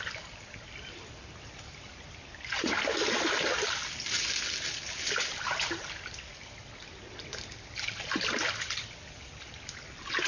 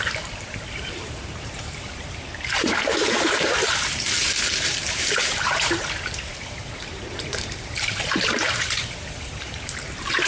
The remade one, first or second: second